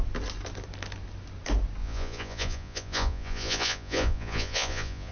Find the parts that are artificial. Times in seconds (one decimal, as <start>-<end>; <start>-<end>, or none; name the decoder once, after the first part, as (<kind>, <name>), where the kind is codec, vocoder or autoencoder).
1.8-5.1 (vocoder, Vocos)